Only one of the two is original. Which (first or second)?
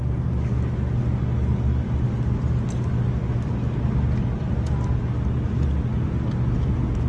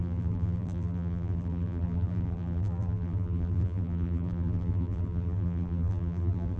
first